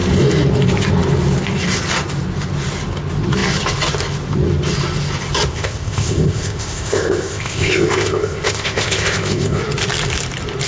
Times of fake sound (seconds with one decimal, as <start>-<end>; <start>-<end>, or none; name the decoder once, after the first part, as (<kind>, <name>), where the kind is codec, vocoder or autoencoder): 5.5-9.6 (codec, ZipCodec)